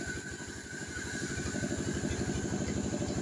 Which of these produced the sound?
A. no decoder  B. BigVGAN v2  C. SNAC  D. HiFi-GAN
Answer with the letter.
A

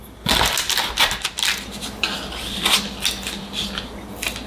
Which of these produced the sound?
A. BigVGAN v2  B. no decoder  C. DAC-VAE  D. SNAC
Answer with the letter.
B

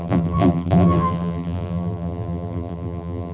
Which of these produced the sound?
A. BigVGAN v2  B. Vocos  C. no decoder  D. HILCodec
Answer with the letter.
A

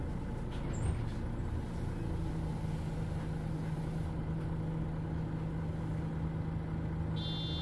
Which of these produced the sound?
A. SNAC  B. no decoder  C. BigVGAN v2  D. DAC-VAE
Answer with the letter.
B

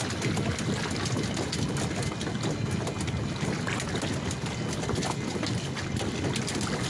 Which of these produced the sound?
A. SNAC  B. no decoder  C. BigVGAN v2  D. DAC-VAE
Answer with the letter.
B